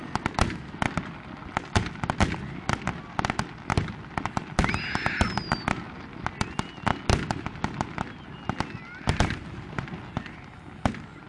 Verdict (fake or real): real